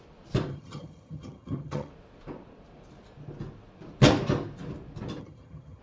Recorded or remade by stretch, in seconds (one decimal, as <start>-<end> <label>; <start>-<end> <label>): 0.0-0.5 recorded; 0.5-1.9 remade; 1.9-5.2 recorded; 5.2-5.8 remade